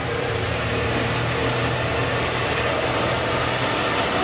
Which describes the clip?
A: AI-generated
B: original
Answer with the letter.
A